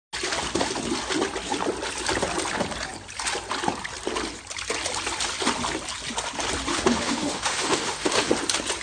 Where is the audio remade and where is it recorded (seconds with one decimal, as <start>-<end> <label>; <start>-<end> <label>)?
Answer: 0.0-6.7 recorded; 6.7-8.3 remade; 8.3-8.8 recorded